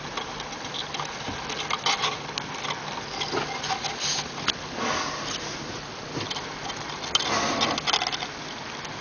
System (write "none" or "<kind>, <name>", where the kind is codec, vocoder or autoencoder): none